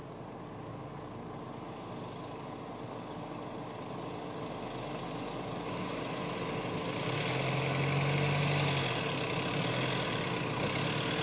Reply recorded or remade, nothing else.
recorded